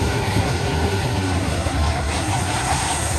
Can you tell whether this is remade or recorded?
remade